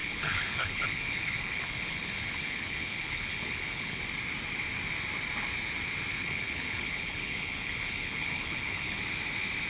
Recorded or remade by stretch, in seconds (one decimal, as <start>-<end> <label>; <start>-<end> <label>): 0.0-4.0 remade; 4.0-6.1 recorded; 6.1-9.0 remade; 9.0-9.7 recorded